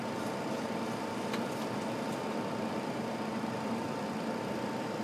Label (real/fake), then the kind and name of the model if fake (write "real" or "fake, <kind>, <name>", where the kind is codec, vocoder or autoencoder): real